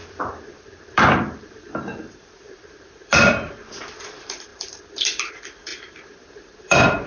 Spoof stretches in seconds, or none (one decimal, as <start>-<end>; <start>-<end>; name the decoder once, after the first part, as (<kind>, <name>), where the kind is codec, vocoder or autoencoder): 0.0-7.1 (vocoder, BigVGAN v2)

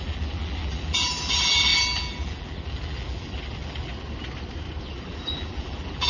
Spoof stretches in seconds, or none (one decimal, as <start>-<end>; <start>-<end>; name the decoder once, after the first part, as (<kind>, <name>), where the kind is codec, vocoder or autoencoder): 0.0-3.9 (vocoder, BigVGAN v2); 4.8-6.1

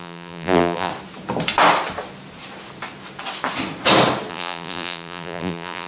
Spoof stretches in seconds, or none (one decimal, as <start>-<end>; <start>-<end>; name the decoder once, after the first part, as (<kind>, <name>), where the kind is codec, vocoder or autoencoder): 0.0-0.9 (vocoder, BigVGAN v2); 4.3-5.9

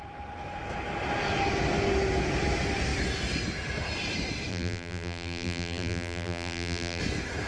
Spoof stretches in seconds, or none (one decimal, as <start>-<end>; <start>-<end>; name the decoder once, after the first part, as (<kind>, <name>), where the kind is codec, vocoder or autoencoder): 4.5-7.0 (vocoder, BigVGAN v2)